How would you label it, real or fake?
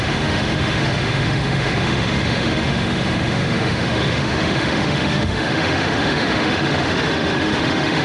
fake